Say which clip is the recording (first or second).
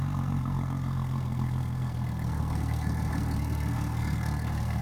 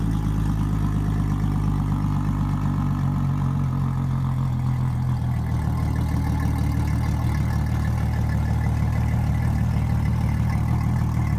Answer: second